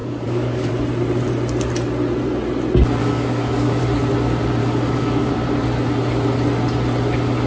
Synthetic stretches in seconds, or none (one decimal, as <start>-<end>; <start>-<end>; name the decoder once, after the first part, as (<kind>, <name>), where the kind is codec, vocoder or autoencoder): 0.0-0.7 (codec, DAC); 3.0-3.8; 4.6-5.3